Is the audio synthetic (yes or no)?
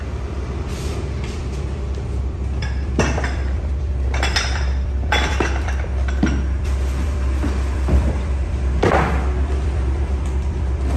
yes